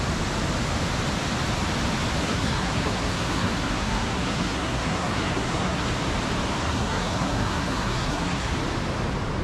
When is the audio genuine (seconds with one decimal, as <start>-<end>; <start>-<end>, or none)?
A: 0.0-2.2; 5.9-6.6; 8.5-9.4